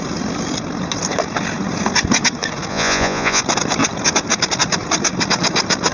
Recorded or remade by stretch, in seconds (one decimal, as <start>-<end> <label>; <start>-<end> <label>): 0.0-2.7 recorded; 2.7-3.4 remade; 3.4-5.9 recorded